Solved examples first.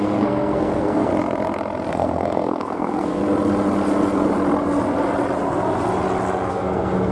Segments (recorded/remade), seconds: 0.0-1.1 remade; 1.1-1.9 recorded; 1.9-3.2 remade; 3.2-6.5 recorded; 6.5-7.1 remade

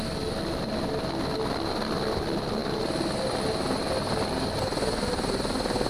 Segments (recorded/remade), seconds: 0.0-5.9 recorded

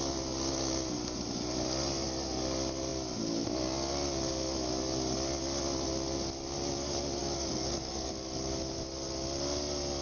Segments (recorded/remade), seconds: 0.0-7.2 recorded; 7.2-8.1 remade; 8.1-10.0 recorded

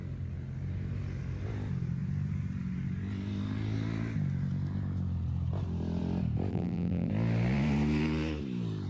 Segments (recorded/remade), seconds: 0.0-6.5 recorded; 6.5-7.1 remade; 7.1-8.9 recorded

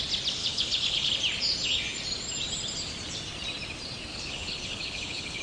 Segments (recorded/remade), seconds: 0.0-0.4 recorded; 0.4-1.1 remade; 1.1-4.1 recorded; 4.1-5.4 remade

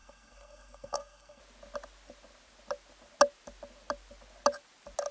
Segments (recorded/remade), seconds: 0.0-1.4 remade; 1.4-5.1 recorded

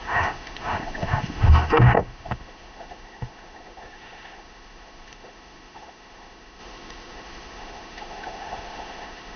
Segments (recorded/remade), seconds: 0.0-9.4 remade

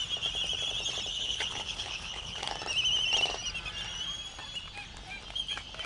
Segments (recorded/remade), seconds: 0.0-1.1 recorded; 1.1-2.5 remade; 2.5-5.9 recorded